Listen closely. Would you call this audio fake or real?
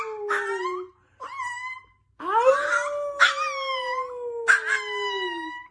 real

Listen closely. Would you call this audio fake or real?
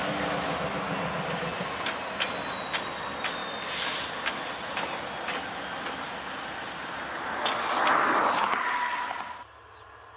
real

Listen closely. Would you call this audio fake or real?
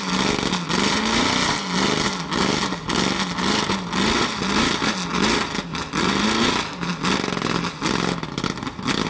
real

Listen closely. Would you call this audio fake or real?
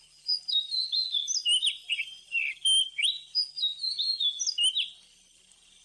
real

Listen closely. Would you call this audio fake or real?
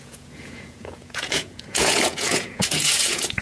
fake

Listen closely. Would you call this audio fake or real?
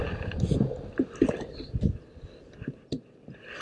real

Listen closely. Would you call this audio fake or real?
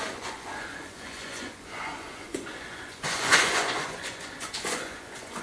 fake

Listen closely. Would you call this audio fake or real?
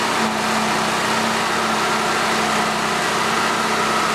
real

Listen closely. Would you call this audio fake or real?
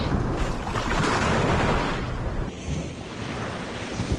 real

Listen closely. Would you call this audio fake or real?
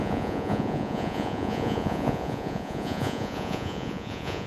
fake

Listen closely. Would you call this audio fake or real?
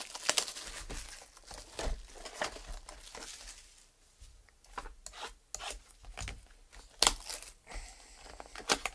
real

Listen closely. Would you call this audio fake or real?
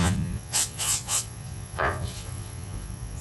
fake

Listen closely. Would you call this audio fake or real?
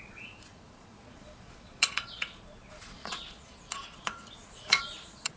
fake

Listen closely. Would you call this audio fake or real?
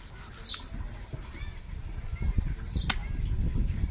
real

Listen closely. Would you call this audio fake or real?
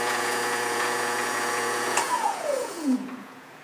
fake